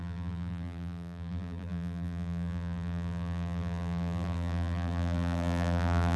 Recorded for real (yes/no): no